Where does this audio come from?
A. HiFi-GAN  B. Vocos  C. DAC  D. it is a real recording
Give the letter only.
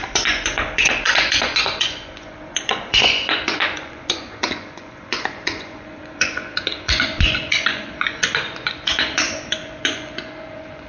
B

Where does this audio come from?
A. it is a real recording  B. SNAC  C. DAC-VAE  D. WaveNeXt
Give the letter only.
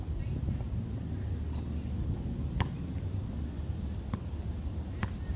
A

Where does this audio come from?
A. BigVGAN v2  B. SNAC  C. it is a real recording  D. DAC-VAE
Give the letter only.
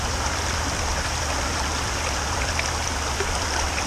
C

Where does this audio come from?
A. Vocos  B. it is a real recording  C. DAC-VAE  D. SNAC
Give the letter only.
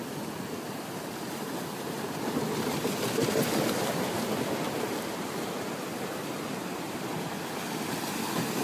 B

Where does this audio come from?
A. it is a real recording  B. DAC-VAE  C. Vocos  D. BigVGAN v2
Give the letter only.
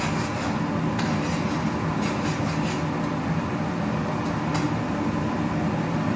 A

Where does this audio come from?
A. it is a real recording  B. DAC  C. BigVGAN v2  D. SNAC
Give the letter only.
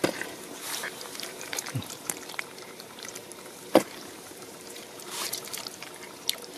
C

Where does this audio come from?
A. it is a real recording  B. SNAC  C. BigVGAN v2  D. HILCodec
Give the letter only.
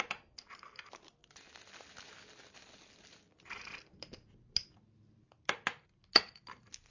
A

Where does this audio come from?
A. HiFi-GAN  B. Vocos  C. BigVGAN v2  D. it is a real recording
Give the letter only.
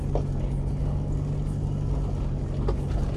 D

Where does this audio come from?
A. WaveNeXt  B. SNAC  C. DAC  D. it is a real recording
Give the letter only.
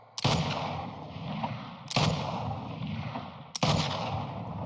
D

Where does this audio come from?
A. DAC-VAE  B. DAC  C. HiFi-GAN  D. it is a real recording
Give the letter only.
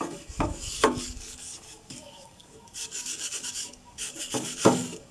B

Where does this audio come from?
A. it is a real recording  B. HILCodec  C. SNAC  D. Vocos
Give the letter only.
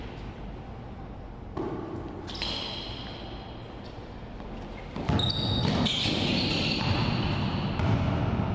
A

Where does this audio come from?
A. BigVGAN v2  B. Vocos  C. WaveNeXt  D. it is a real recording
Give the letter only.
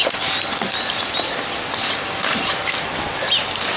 D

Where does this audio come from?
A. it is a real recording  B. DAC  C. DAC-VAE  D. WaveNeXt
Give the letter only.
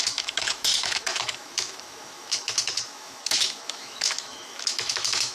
C